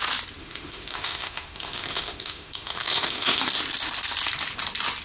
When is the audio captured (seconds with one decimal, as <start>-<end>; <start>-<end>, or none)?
0.0-0.4; 3.4-5.0